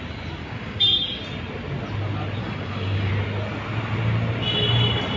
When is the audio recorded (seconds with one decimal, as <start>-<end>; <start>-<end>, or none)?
0.0-0.4; 1.2-2.4; 3.1-5.2